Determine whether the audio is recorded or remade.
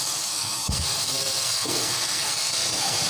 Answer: remade